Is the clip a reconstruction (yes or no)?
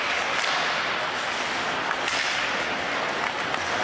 no